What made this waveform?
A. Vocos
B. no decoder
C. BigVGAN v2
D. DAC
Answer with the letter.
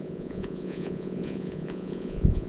A